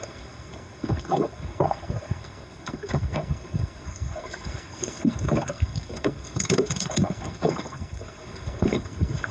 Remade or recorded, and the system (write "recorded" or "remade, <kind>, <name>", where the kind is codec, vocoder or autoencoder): remade, codec, SNAC